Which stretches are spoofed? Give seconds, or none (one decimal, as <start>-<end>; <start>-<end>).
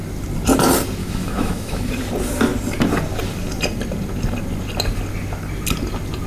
1.0-1.9